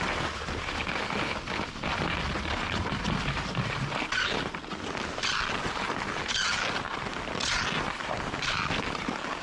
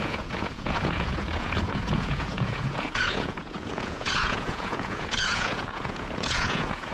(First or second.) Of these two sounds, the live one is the first